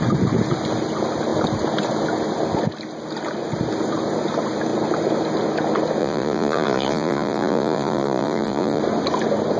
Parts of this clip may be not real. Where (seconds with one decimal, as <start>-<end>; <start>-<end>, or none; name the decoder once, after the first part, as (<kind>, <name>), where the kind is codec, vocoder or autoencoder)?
6.0-8.8 (vocoder, Vocos)